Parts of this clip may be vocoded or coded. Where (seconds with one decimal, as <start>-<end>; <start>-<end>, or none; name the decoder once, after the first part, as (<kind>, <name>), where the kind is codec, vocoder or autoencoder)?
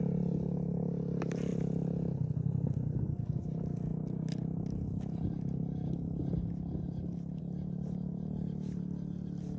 none